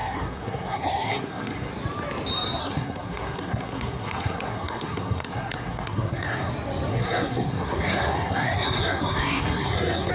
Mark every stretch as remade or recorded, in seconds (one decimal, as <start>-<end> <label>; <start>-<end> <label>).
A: 0.0-1.7 remade; 1.7-2.6 recorded; 2.6-6.5 remade; 6.5-6.9 recorded; 6.9-10.1 remade